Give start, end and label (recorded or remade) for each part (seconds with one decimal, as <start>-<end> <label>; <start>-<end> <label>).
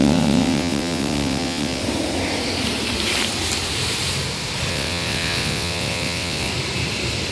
0.0-1.8 remade; 1.8-4.7 recorded; 4.7-6.5 remade; 6.5-7.3 recorded